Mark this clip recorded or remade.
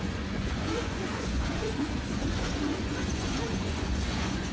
remade